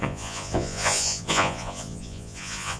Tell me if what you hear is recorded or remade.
remade